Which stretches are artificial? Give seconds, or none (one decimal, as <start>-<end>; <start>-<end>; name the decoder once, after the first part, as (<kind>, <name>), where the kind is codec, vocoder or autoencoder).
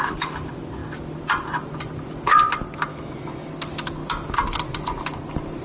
2.9-3.5 (autoencoder, DAC-VAE)